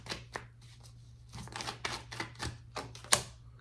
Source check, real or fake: real